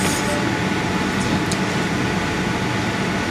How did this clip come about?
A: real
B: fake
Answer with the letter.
A